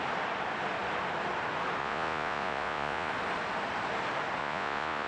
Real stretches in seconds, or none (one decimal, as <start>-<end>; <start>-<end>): 0.0-1.8; 3.1-4.4